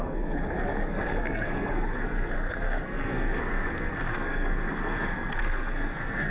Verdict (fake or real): fake